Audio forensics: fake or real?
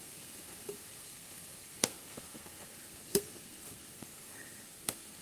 fake